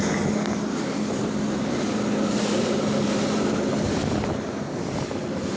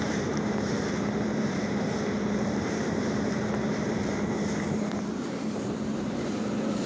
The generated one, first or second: second